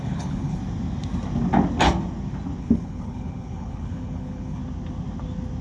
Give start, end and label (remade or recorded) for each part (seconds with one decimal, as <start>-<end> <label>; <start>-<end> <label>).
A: 0.0-0.6 remade; 0.6-2.6 recorded; 2.6-4.6 remade; 4.6-5.6 recorded